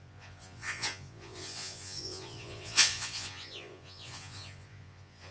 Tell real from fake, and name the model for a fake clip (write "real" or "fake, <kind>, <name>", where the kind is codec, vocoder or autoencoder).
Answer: fake, vocoder, Vocos